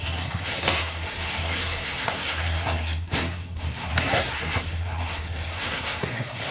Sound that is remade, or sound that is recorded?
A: remade